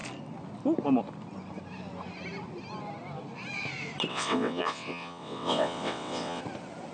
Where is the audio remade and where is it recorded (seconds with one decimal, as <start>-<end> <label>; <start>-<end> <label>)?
0.0-4.1 recorded; 4.1-6.4 remade; 6.4-6.9 recorded